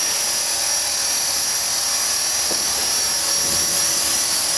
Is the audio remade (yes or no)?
no